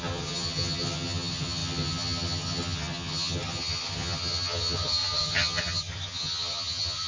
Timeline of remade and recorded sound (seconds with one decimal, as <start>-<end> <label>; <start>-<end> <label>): 0.0-7.1 remade